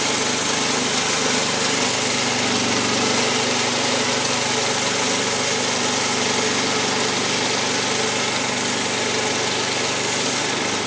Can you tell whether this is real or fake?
real